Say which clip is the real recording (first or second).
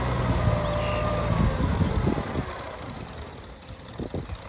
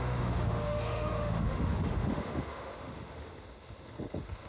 first